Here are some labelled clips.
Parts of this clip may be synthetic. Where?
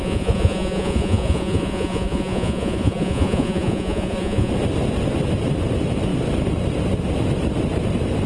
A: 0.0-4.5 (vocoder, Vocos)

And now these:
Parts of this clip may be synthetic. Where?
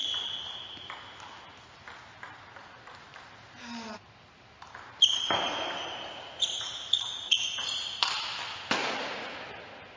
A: 5.5-7.9 (vocoder, Vocos); 8.8-9.5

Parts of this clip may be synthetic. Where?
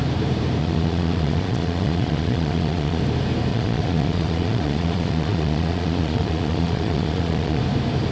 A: 0.6-3.0 (vocoder, Vocos); 3.5-7.6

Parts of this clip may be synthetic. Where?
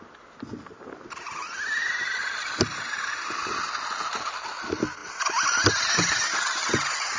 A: none